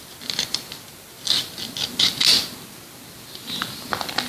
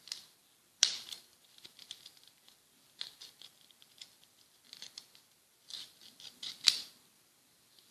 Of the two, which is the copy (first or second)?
second